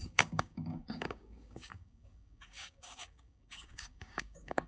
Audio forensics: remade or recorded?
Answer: remade